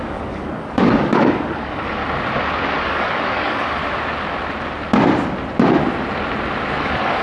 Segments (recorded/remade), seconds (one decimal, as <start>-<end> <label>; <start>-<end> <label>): 0.0-2.0 remade; 2.0-2.8 recorded; 2.8-3.8 remade; 3.8-6.8 recorded; 6.8-7.2 remade